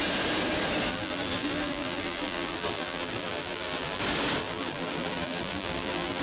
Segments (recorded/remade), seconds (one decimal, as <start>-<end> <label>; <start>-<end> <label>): 0.0-0.9 recorded; 0.9-4.0 remade; 4.0-4.4 recorded; 4.4-6.2 remade